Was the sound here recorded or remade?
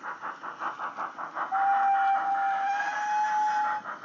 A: recorded